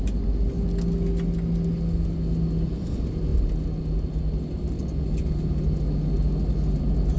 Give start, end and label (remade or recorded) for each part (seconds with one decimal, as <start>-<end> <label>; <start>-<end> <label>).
0.0-7.2 recorded